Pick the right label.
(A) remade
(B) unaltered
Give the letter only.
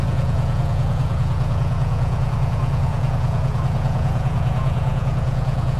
A